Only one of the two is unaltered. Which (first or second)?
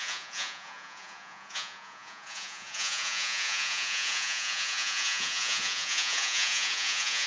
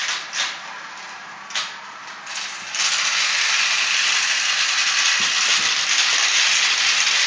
second